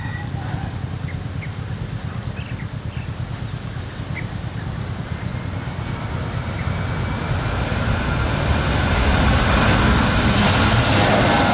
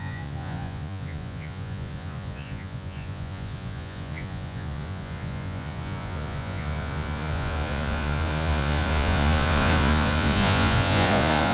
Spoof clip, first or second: second